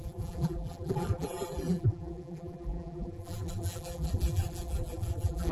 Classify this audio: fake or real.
fake